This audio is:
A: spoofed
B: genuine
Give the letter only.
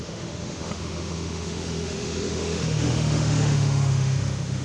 A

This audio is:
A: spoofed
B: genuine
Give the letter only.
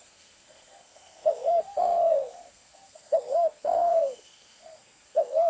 A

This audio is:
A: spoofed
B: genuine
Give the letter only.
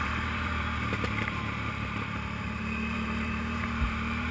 A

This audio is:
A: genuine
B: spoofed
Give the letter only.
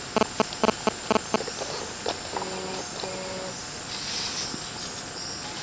A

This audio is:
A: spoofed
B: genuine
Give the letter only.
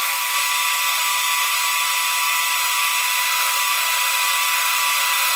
B